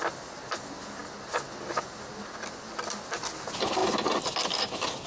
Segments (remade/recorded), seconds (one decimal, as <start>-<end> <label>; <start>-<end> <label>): 0.0-5.1 recorded